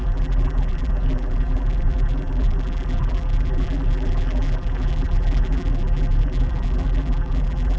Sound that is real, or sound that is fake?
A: fake